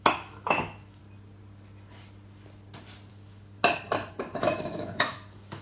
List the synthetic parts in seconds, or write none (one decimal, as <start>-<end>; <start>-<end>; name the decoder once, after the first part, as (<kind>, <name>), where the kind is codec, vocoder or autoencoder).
0.0-1.0 (autoencoder, DAC-VAE); 3.1-3.6; 4.1-5.6